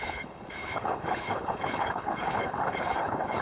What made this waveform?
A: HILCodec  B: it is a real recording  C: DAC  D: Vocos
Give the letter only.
A